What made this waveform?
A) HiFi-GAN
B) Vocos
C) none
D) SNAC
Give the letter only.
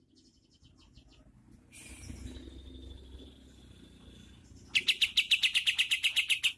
C